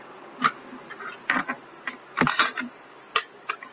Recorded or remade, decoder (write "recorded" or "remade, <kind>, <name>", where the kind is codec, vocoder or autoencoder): recorded